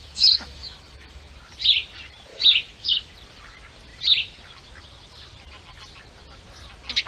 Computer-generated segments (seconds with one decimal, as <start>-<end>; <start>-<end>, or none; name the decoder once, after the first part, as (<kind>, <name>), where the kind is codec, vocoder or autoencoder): 0.0-1.3 (autoencoder, DAC-VAE); 2.3-3.1